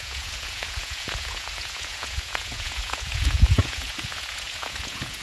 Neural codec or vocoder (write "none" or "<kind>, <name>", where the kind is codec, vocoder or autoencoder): vocoder, Vocos